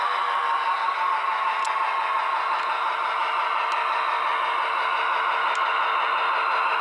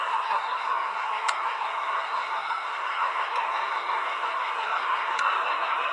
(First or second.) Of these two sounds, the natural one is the first